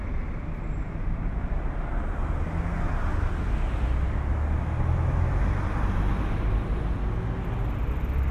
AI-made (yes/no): no